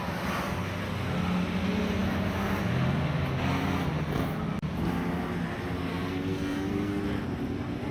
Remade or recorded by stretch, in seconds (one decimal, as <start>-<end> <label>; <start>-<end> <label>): 0.0-5.9 recorded; 5.9-7.0 remade; 7.0-7.9 recorded